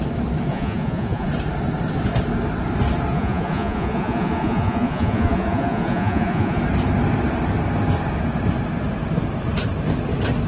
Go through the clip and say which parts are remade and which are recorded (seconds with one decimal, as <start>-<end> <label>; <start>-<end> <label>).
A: 0.0-0.5 recorded; 0.5-1.3 remade; 1.3-3.1 recorded; 3.1-6.6 remade; 6.6-10.5 recorded